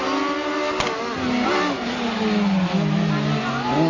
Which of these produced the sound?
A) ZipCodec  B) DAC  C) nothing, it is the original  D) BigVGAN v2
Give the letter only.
C